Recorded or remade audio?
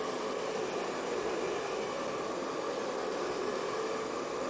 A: recorded